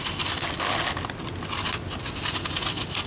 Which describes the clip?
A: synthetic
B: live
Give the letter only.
B